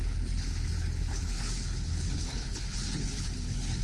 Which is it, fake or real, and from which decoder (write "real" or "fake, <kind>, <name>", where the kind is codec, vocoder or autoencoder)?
fake, codec, HILCodec